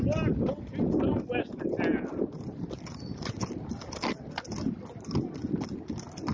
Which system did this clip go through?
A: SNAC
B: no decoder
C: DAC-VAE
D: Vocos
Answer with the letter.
B